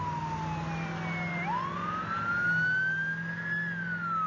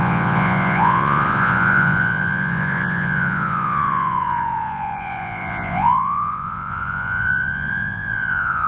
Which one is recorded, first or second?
first